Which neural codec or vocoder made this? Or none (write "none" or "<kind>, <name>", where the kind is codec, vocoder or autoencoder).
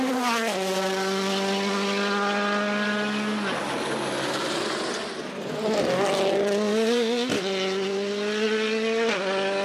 none